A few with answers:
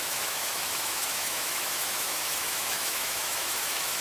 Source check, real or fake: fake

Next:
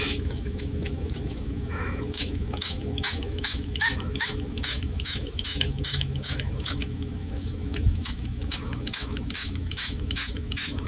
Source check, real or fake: fake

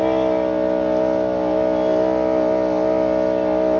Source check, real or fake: real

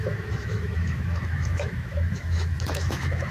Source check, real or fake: fake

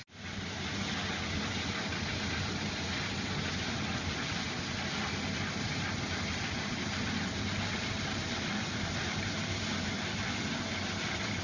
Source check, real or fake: real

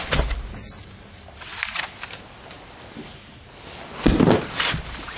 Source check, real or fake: real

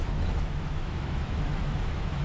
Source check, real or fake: fake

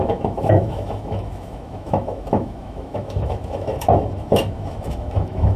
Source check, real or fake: fake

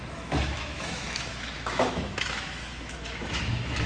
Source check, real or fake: fake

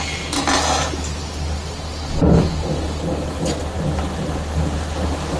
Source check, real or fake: real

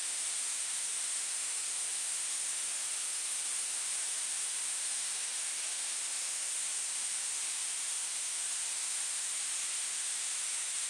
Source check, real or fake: fake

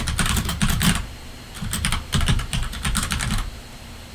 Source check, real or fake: real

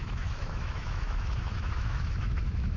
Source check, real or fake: fake